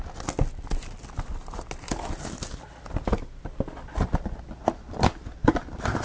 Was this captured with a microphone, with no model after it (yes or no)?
yes